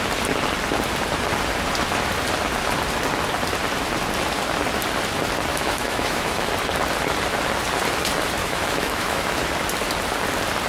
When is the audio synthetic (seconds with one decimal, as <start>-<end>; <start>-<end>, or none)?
5.5-6.5; 8.4-9.4